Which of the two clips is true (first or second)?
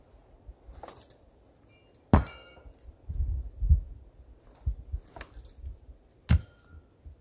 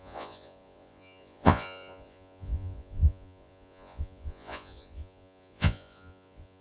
first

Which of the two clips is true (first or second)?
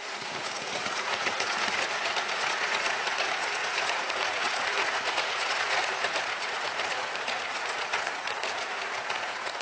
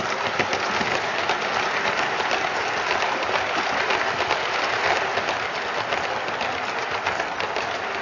second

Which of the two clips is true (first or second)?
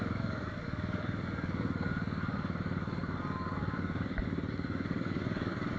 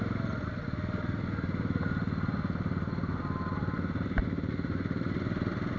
second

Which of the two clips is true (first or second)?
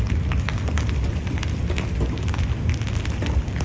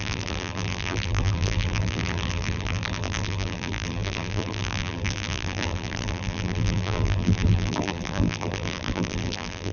first